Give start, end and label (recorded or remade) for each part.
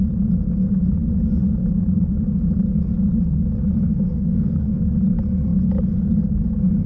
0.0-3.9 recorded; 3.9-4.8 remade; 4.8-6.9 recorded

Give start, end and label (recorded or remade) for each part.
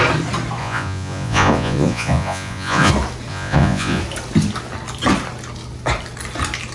0.0-0.6 recorded; 0.6-2.9 remade; 2.9-3.3 recorded; 3.3-4.0 remade; 4.0-6.7 recorded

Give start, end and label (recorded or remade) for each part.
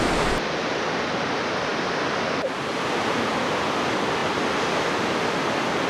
0.0-5.9 recorded